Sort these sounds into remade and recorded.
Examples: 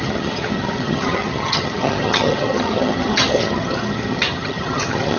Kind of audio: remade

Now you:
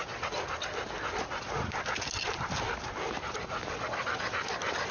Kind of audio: recorded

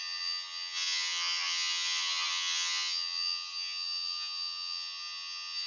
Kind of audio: remade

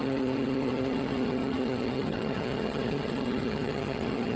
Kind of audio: remade